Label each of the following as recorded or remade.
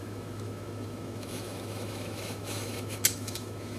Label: remade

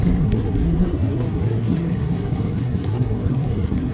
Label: remade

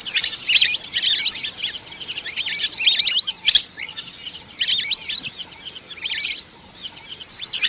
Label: recorded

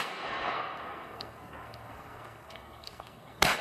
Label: remade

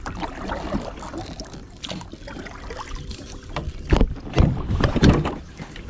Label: remade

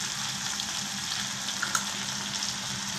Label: recorded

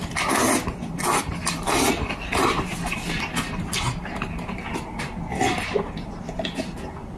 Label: recorded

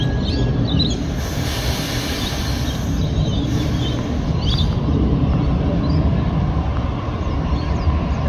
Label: recorded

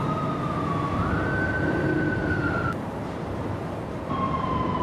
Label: recorded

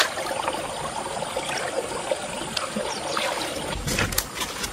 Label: recorded